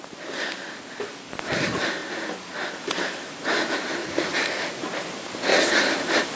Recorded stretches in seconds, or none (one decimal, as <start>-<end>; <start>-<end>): 0.0-4.0; 4.8-5.5; 6.0-6.4